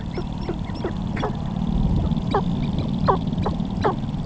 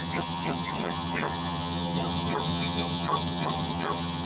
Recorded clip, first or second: first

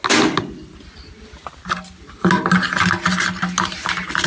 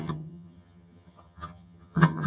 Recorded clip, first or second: first